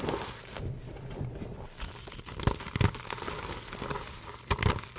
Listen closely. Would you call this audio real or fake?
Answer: real